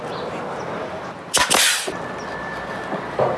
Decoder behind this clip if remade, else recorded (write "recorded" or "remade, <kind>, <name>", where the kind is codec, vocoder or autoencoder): recorded